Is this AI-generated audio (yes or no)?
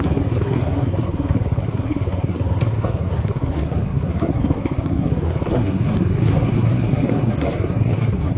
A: yes